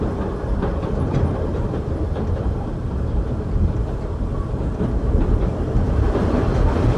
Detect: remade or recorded remade